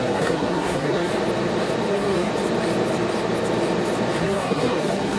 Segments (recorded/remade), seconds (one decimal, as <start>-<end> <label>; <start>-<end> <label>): 0.0-1.1 remade; 1.1-1.9 recorded; 1.9-2.3 remade; 2.3-4.2 recorded; 4.2-5.2 remade